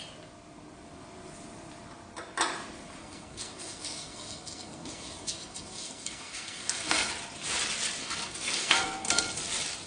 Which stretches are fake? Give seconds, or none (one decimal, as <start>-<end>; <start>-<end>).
3.0-7.1; 8.0-9.2